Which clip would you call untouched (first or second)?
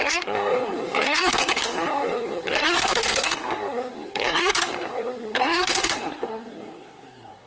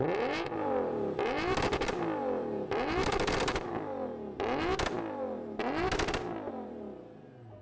second